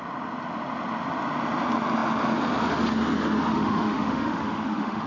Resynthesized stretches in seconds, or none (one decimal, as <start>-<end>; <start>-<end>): 3.5-5.1